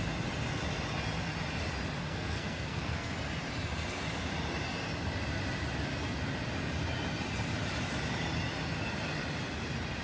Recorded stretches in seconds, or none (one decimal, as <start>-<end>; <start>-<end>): 0.0-2.0; 3.1-10.0